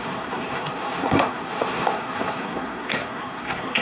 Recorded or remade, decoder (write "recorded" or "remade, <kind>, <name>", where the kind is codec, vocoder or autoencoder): remade, codec, SNAC